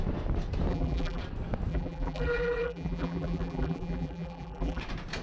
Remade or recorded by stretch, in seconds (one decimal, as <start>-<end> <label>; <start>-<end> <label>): 0.0-0.7 recorded; 0.7-1.2 remade; 1.2-1.7 recorded; 1.7-4.8 remade; 4.8-5.2 recorded